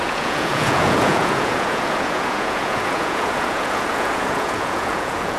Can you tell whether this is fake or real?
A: fake